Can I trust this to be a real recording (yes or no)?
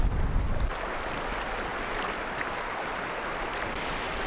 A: yes